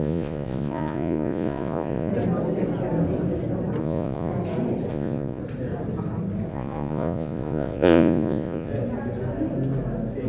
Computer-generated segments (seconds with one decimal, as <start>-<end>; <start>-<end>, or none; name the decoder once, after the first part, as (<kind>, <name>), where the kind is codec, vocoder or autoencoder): 0.0-2.1 (vocoder, Vocos); 3.8-4.3; 4.9-5.4; 6.5-8.7